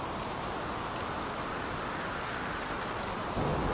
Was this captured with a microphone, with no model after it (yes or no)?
yes